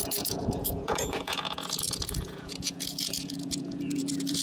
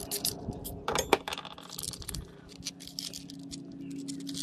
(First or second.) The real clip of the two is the second